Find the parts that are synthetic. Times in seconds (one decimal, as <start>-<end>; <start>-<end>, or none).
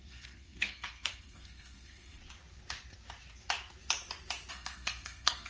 0.0-2.2; 4.5-5.5